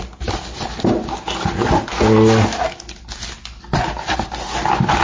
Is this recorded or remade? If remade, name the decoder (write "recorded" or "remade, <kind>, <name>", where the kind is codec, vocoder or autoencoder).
recorded